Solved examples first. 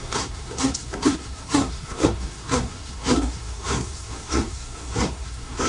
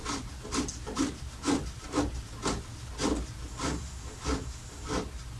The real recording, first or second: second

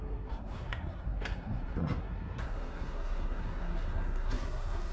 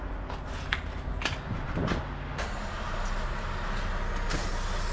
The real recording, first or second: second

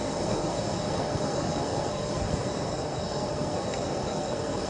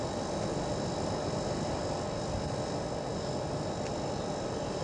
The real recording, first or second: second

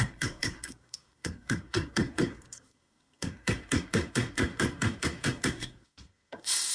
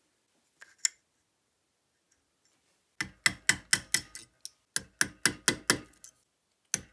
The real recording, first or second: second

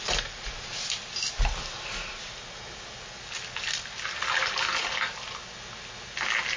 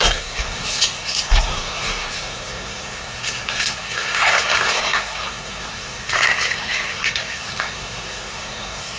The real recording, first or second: first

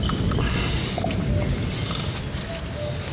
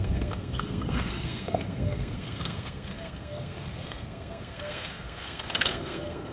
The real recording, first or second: first